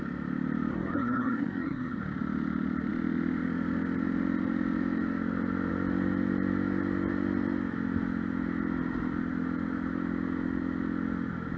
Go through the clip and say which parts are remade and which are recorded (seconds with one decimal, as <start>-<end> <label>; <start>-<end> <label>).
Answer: 0.0-0.7 recorded; 0.7-2.0 remade; 2.0-11.6 recorded